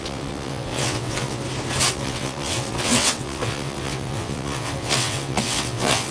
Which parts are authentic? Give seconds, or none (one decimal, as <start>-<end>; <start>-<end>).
1.4-1.9